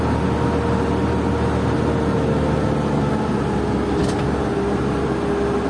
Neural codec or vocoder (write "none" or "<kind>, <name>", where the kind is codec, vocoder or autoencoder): none